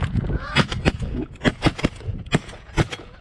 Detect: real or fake fake